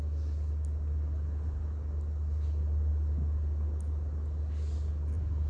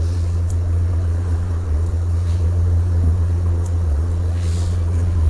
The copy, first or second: second